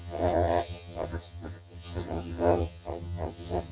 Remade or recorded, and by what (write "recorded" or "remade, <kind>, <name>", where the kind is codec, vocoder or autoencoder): remade, vocoder, HiFi-GAN